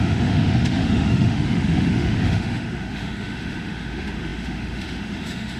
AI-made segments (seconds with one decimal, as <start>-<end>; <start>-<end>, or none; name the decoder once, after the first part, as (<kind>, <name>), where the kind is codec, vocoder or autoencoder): 0.0-5.6 (autoencoder, DAC-VAE)